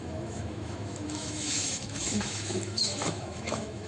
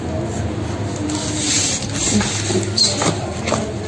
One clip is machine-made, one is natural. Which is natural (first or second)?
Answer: second